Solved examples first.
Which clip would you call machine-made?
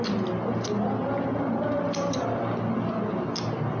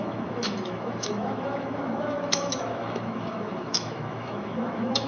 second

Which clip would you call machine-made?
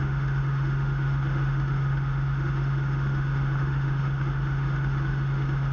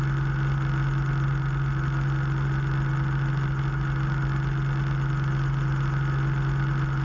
first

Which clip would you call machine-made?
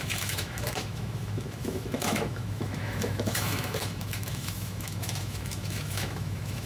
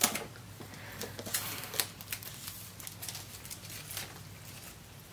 first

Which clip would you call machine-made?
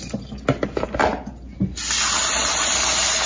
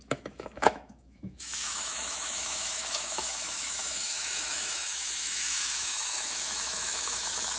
second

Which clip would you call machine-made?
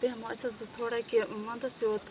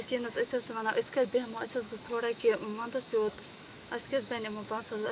second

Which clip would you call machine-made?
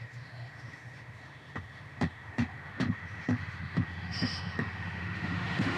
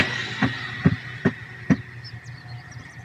first